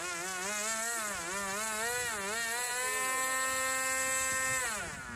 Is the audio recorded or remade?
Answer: recorded